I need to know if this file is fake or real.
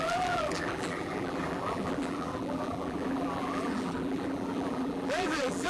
fake